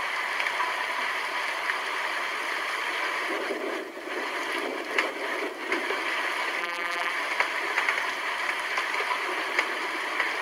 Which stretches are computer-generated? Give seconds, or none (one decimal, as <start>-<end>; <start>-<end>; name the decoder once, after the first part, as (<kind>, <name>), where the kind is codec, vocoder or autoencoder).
6.6-7.1 (vocoder, BigVGAN v2)